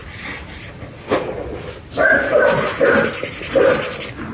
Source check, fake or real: real